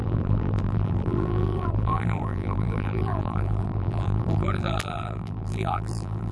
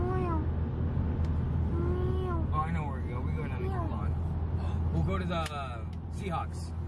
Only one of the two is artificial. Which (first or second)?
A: first